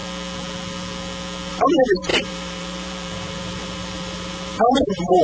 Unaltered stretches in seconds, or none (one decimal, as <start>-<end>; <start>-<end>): 0.0-1.5